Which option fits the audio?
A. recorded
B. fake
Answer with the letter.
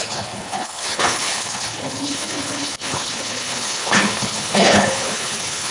B